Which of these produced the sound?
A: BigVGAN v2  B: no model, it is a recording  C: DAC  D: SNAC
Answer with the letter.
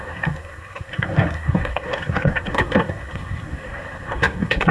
D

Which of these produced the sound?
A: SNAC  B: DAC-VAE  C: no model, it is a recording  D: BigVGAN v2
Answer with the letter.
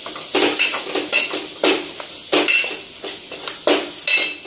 C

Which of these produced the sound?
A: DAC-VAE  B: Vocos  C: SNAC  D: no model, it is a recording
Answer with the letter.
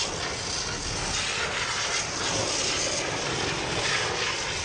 D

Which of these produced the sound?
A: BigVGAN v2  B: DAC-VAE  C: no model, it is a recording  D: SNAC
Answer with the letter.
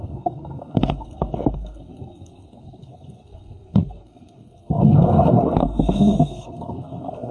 D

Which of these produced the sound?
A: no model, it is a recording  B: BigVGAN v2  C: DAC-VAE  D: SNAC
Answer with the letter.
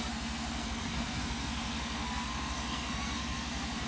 D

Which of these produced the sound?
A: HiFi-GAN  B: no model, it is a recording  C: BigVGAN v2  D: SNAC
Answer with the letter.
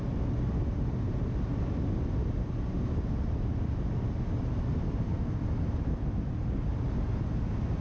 B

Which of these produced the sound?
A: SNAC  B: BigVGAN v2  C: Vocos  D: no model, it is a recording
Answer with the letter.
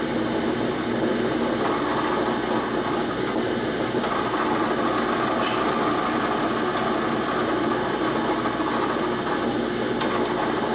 D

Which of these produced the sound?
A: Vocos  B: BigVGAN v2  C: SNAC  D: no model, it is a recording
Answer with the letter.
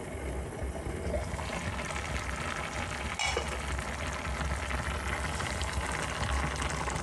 D